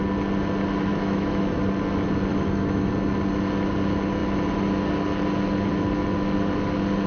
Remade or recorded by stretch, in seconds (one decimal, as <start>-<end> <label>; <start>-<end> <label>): 0.0-0.9 recorded; 0.9-1.6 remade; 1.6-2.3 recorded; 2.3-2.9 remade; 2.9-7.1 recorded